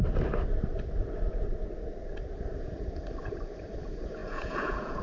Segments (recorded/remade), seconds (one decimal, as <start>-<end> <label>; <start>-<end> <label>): 0.0-4.2 recorded; 4.2-5.0 remade